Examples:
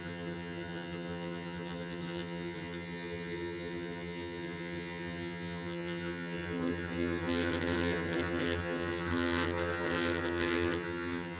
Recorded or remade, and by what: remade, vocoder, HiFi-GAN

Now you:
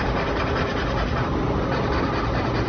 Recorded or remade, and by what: recorded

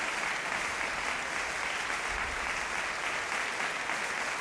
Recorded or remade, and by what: recorded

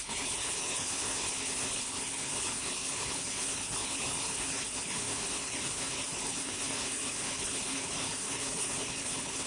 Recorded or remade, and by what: remade, codec, HILCodec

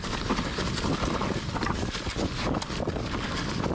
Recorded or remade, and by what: recorded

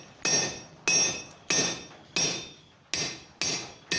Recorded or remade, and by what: recorded